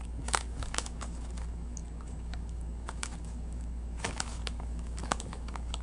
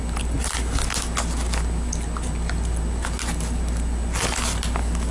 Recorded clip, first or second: second